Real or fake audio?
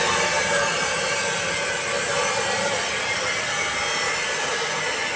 real